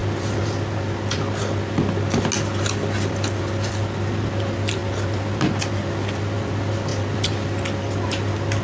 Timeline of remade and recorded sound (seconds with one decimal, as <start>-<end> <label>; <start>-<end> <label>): 0.0-8.6 recorded